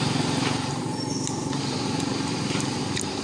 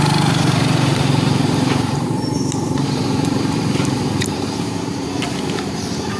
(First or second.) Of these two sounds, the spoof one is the second